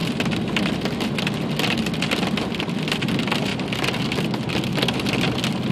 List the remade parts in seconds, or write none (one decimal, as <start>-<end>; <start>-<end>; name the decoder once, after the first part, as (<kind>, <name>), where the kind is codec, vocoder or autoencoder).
none